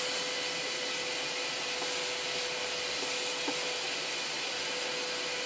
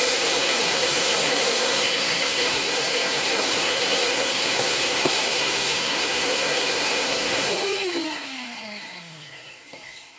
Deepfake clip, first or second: second